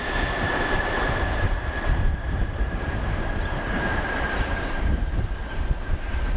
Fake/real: fake